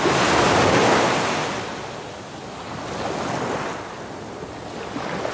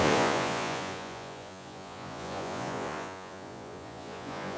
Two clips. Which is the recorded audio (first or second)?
first